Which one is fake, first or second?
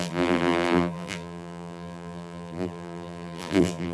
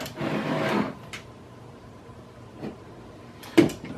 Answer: first